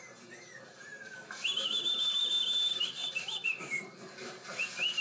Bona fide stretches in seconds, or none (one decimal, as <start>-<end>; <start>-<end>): none